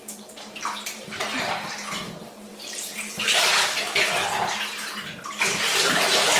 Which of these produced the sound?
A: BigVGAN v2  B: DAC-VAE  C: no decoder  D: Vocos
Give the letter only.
A